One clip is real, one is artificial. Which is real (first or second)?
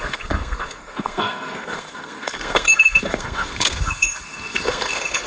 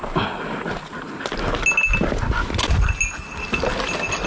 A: second